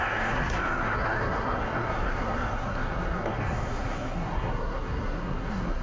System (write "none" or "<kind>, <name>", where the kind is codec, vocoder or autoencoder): codec, SNAC